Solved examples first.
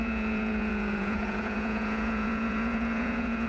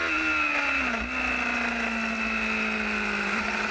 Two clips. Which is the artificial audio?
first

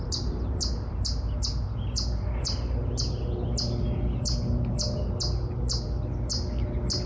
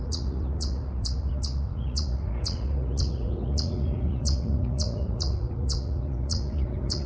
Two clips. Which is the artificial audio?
second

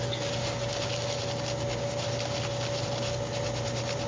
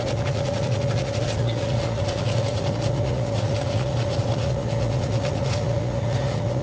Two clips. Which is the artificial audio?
second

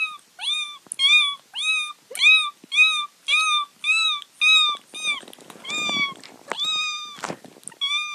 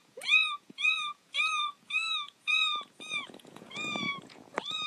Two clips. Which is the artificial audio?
second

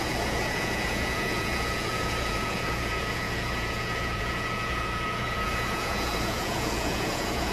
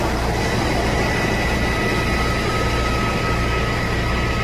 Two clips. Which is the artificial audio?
first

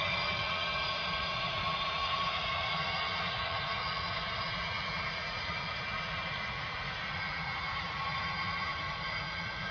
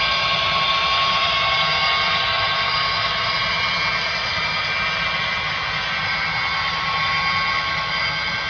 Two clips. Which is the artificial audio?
first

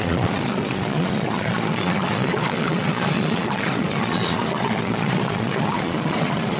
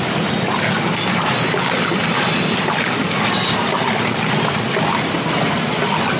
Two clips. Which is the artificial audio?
first